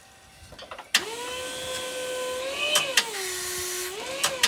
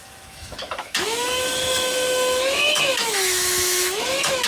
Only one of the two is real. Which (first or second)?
first